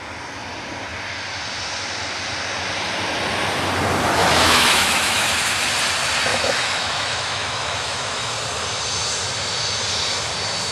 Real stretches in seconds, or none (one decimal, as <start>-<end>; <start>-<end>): 0.0-4.2; 5.3-6.3; 8.3-10.7